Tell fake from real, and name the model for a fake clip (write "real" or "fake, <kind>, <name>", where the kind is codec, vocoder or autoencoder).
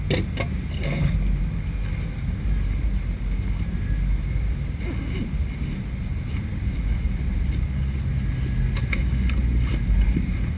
real